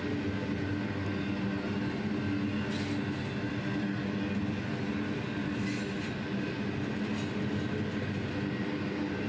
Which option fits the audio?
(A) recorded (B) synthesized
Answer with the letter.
A